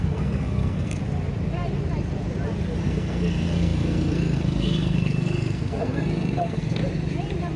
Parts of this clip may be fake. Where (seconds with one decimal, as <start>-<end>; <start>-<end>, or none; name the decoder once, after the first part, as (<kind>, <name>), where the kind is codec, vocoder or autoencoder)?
0.0-1.0 (codec, SNAC); 2.8-6.8